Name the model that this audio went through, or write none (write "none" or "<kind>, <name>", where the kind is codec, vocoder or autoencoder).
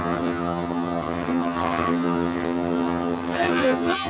vocoder, HiFi-GAN